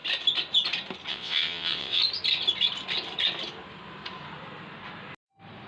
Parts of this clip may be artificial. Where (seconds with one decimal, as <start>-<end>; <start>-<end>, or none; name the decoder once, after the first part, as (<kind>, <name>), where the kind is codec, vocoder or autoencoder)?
1.1-2.0 (vocoder, WaveNeXt)